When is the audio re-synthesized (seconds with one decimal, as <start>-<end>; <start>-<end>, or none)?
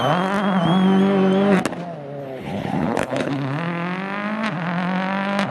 2.2-3.3